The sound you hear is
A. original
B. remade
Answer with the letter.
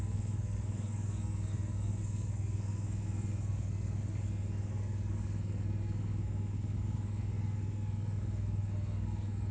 B